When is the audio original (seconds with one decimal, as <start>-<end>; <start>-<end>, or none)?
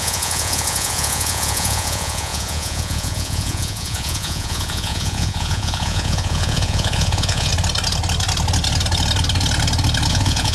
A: 7.5-10.1